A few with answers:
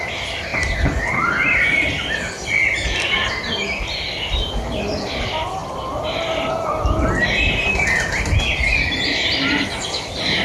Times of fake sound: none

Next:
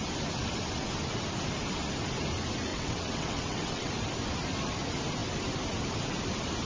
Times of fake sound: 2.7-3.9 (vocoder, WaveNeXt)

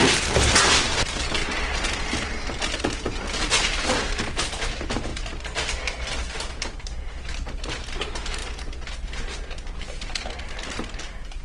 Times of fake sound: none

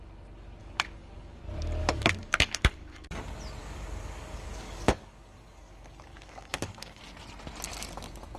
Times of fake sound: 0.6-1.4 (codec, DAC); 1.8-3.2; 3.6-7.0

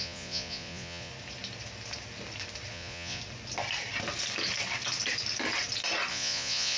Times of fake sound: 0.0-1.1 (vocoder, Vocos); 2.7-3.2; 6.1-6.8